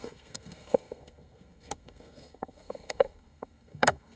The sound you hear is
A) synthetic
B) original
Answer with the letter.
A